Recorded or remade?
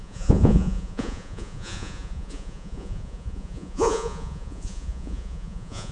remade